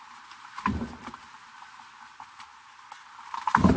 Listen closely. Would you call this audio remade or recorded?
recorded